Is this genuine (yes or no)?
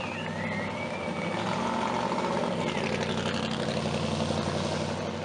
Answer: yes